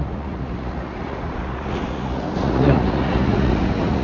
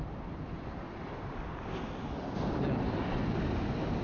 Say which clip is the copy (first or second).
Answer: first